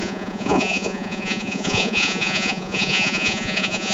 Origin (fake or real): fake